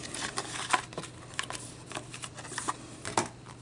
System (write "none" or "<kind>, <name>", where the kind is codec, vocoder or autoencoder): none